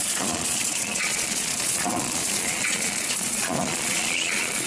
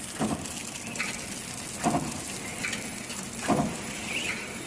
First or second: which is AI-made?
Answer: first